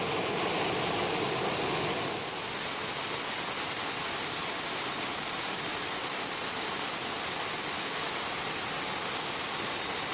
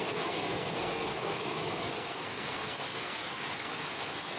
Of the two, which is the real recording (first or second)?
first